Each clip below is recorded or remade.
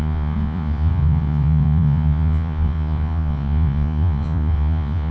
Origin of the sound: remade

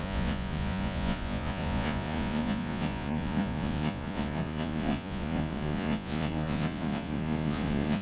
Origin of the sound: remade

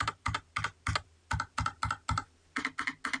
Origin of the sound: recorded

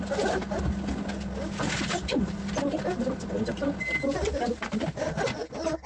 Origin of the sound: recorded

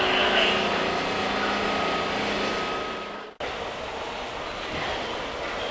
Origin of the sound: recorded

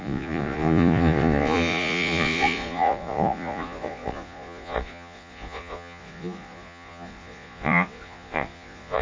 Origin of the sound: remade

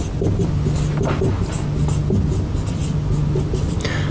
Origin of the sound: recorded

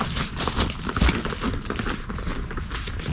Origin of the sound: recorded